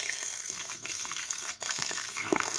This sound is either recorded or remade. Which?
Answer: remade